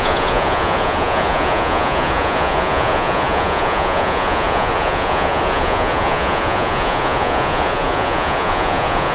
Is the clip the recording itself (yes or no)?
no